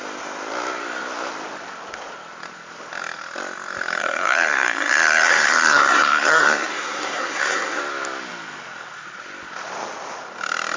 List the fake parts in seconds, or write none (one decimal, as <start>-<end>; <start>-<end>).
4.0-7.8